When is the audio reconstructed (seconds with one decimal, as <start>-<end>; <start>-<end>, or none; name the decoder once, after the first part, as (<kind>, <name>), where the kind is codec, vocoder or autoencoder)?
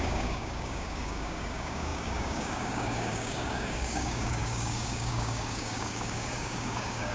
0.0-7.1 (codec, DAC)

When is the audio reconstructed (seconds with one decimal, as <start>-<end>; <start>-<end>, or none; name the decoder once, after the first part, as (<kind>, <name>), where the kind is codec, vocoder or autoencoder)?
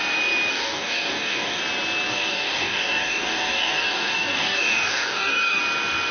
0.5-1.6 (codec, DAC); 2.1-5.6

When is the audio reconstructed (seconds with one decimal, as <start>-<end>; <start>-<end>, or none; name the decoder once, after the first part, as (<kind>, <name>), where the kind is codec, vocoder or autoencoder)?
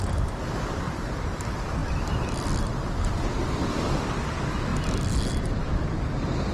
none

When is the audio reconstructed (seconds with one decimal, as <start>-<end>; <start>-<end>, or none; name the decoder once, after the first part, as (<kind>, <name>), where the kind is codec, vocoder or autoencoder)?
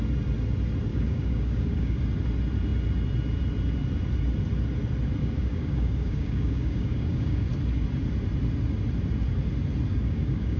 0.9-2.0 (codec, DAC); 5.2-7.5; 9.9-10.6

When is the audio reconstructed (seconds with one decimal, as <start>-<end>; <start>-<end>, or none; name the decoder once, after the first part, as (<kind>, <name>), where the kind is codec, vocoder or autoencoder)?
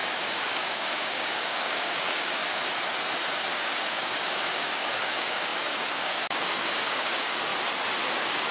0.0-2.4 (codec, DAC); 3.5-7.5; 8.1-8.5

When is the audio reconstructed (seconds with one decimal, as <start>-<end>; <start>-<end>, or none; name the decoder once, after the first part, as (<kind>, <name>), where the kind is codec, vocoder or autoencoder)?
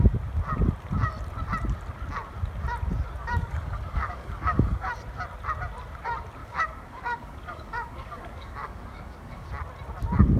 3.2-4.9 (codec, DAC); 6.4-9.5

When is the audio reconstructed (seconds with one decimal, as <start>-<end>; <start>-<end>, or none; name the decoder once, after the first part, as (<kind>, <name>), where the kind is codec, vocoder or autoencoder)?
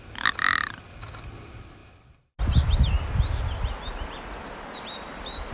none